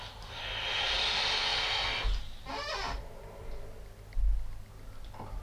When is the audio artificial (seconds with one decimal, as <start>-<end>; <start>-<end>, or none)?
none